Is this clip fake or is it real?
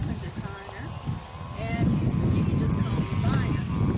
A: real